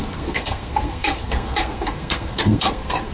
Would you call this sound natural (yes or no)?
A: no